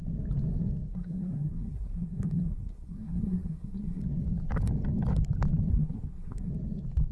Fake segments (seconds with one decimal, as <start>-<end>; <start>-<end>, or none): 0.9-4.0; 5.7-6.5